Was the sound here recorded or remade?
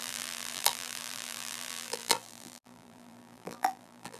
remade